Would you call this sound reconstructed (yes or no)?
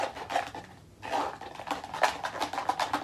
no